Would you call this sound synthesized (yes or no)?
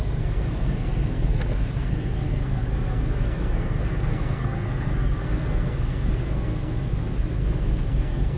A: yes